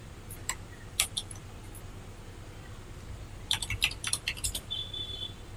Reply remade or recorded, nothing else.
remade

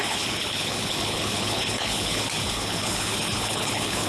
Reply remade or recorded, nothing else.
remade